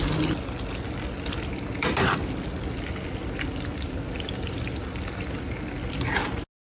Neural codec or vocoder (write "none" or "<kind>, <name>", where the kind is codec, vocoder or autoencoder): none